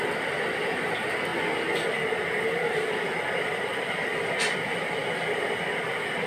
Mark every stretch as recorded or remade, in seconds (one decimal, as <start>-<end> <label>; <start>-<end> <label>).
0.0-1.3 remade; 1.3-2.3 recorded; 2.3-6.3 remade